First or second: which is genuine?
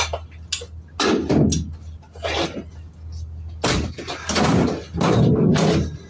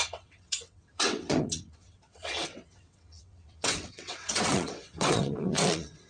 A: first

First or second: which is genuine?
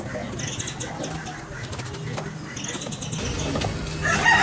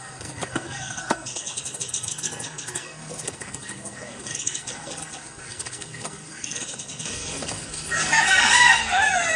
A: first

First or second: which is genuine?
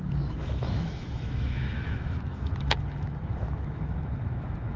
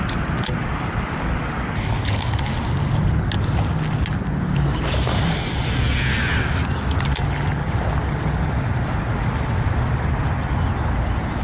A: second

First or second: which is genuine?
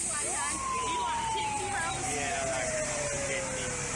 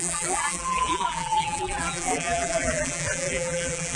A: first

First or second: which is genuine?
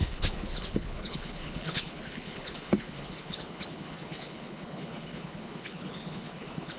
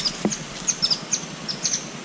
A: second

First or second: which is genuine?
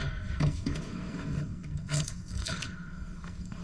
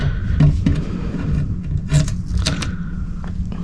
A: second